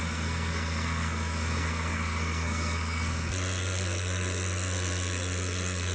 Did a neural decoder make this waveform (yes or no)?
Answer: yes